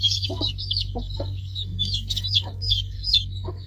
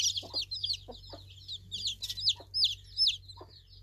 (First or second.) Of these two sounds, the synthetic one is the first